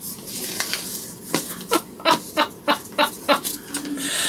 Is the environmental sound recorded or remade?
recorded